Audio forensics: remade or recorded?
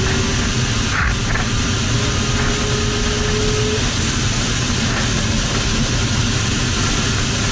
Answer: recorded